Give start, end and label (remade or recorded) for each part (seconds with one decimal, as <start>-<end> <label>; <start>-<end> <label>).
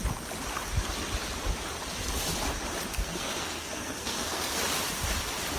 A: 0.0-2.9 recorded; 2.9-4.6 remade; 4.6-5.6 recorded